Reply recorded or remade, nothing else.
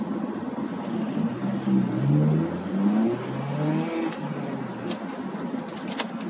recorded